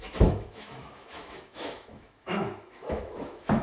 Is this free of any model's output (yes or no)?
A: no